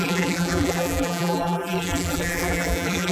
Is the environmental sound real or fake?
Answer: fake